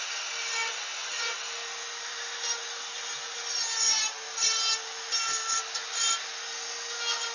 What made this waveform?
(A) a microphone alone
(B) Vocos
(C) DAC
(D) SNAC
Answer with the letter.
A